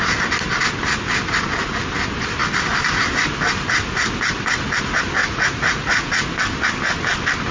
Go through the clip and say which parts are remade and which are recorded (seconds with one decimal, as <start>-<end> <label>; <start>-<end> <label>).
0.0-5.2 recorded; 5.2-6.1 remade; 6.1-7.5 recorded